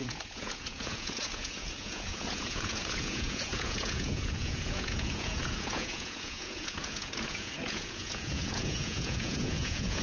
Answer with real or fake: fake